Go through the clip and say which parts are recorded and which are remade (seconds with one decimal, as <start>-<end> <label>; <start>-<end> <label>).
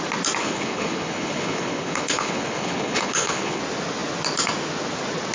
0.0-0.4 recorded; 0.4-3.6 remade; 3.6-5.3 recorded